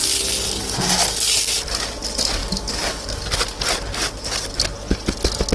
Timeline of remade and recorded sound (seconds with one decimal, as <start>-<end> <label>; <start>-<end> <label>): 0.0-5.5 recorded